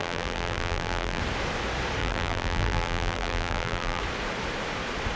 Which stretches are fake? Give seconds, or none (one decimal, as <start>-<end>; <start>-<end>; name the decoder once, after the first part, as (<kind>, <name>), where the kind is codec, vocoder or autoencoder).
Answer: 0.0-1.2 (vocoder, BigVGAN v2); 2.0-4.0